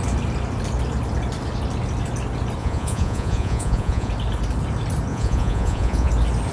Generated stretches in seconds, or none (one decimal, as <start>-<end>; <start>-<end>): 2.6-4.1; 5.1-6.1